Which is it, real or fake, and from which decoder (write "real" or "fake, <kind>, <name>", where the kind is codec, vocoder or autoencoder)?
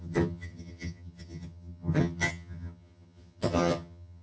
fake, vocoder, HiFi-GAN